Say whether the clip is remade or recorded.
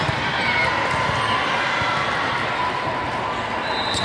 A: recorded